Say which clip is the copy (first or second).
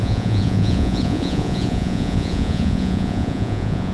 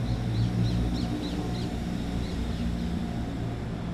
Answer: first